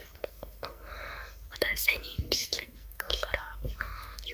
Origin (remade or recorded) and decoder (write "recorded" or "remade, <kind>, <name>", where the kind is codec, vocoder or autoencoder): remade, codec, SNAC